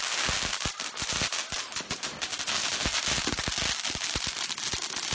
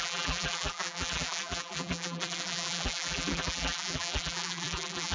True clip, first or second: first